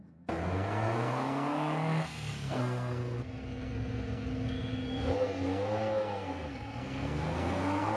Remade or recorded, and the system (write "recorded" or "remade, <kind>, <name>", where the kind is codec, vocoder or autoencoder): remade, codec, SNAC